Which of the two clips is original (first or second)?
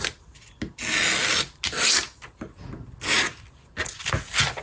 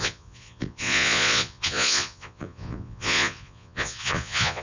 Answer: first